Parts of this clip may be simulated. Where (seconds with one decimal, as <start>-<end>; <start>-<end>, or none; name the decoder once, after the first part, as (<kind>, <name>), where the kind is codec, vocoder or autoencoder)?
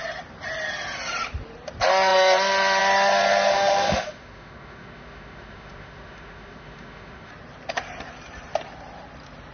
3.5-7.3 (autoencoder, DAC-VAE)